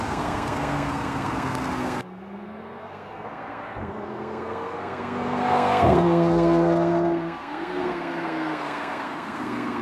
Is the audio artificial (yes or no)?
yes